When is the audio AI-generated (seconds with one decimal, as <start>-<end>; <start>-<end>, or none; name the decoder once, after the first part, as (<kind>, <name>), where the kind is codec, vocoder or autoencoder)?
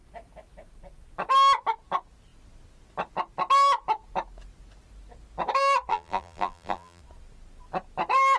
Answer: 5.9-7.0 (vocoder, BigVGAN v2)